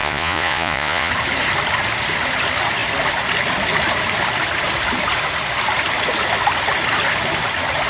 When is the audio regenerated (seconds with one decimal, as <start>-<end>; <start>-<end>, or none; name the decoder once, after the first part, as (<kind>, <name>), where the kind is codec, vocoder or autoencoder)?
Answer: 0.0-1.1 (vocoder, Vocos)